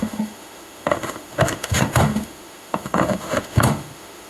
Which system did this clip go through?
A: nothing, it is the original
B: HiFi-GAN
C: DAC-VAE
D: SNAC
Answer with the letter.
C